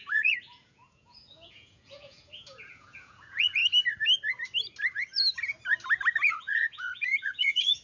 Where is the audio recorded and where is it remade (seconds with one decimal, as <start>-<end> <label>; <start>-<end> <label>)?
0.0-3.6 remade; 3.6-6.3 recorded; 6.3-7.8 remade